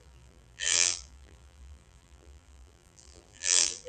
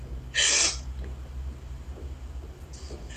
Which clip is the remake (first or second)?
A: first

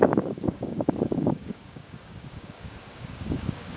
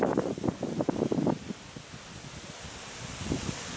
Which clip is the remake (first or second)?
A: first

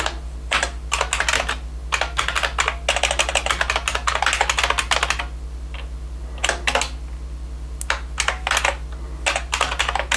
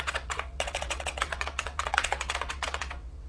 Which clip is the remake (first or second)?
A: second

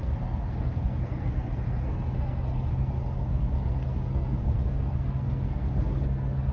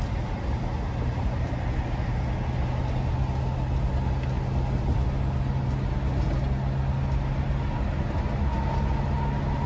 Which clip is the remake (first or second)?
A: first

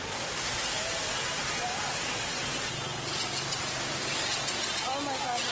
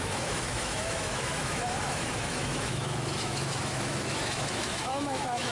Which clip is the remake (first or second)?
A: second